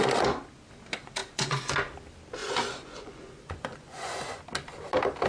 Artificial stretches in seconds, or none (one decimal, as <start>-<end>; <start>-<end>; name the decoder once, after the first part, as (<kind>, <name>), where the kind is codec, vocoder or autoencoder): 1.2-1.7 (vocoder, Vocos); 2.4-4.4